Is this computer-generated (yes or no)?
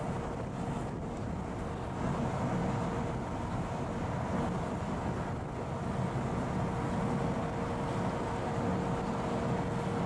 no